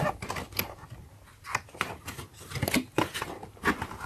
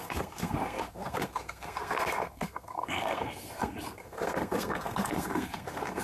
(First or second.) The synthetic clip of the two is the second